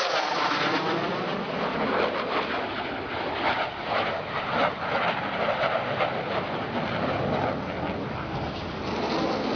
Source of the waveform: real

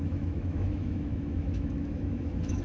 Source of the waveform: fake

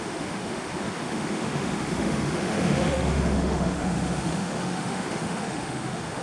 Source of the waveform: fake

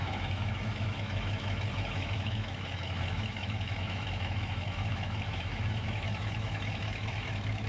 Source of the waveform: fake